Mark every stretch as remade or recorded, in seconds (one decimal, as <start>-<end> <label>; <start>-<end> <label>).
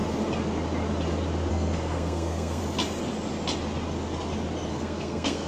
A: 0.0-1.5 recorded; 1.5-2.6 remade; 2.6-4.7 recorded; 4.7-5.5 remade